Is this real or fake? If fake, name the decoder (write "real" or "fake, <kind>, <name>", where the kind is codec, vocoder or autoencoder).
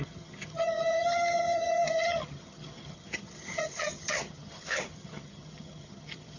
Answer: fake, vocoder, HiFi-GAN